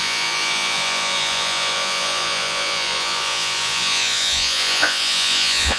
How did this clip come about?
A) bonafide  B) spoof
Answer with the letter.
B